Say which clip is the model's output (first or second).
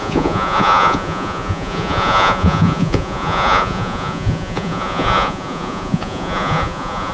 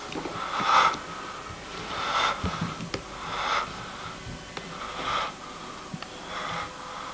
first